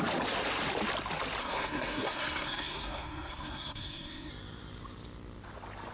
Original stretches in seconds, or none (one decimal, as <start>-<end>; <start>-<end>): 0.0-1.4; 4.3-5.9